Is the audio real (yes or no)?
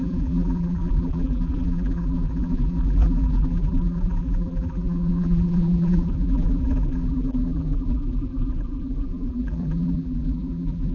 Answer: no